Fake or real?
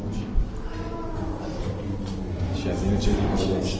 real